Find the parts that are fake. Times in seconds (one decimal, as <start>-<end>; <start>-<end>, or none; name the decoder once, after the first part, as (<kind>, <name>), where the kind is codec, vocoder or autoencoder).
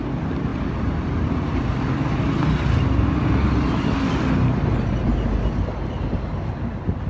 none